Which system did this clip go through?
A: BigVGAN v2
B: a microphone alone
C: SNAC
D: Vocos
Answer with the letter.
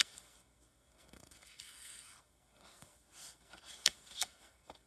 C